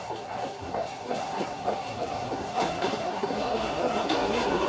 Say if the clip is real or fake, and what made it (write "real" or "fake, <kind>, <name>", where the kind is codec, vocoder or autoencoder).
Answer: fake, codec, SNAC